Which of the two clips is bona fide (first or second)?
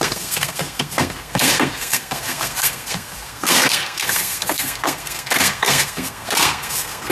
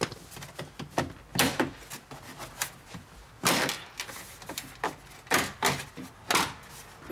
second